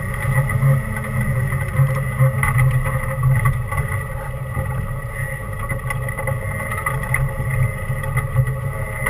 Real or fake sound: real